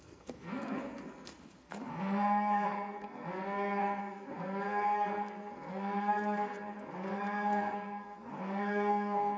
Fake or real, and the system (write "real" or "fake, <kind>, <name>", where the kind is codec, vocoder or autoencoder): fake, codec, SNAC